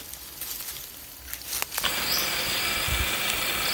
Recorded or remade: recorded